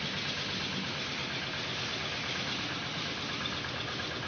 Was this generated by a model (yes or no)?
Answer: no